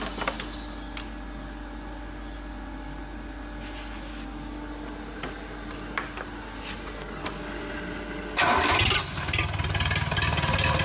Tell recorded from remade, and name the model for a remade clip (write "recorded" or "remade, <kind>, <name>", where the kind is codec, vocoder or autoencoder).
recorded